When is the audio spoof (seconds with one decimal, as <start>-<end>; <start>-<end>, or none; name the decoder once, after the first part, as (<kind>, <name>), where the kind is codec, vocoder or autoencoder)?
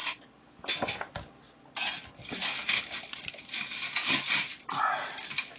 none